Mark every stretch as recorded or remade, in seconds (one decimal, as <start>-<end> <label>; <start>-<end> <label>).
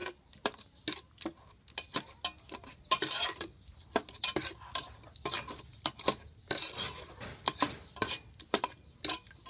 0.0-9.5 recorded